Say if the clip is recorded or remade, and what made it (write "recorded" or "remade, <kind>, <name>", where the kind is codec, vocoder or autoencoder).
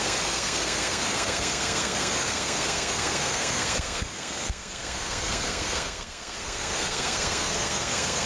remade, codec, SNAC